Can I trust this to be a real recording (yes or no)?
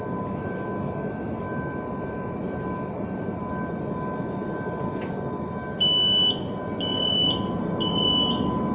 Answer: yes